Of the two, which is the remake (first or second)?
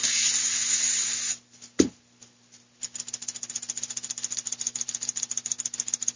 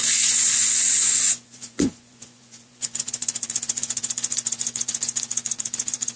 second